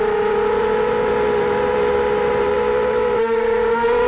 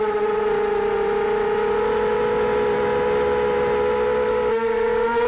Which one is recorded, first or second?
second